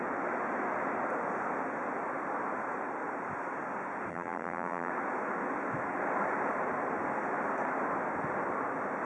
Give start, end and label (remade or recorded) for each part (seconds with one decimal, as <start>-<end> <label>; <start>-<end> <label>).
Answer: 0.0-4.1 recorded; 4.1-4.9 remade; 4.9-9.0 recorded